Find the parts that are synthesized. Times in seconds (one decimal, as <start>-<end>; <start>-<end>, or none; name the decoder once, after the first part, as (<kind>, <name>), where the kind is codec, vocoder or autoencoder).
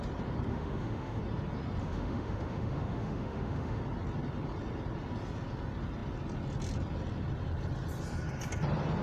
0.5-1.2 (autoencoder, DAC-VAE); 1.8-3.8